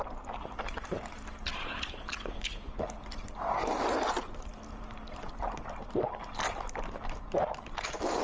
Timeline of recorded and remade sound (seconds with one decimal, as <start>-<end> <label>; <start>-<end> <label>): 0.0-1.6 recorded; 1.6-2.8 remade; 2.8-8.2 recorded

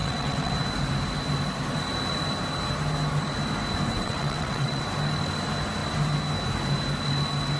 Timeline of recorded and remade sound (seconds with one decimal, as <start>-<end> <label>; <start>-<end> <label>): 0.0-0.5 remade; 0.5-3.9 recorded; 3.9-4.8 remade; 4.8-7.6 recorded